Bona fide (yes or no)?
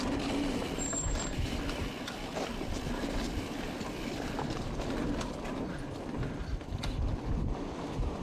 no